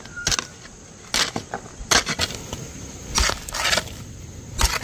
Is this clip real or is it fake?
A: real